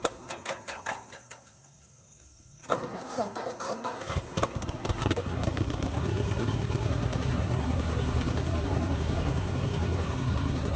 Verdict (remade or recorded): remade